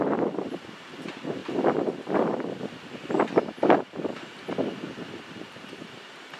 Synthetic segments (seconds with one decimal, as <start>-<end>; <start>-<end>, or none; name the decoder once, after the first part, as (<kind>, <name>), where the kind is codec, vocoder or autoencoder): 0.0-1.4 (vocoder, BigVGAN v2); 5.2-6.4